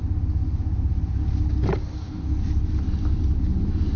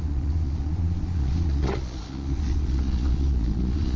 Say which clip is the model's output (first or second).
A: second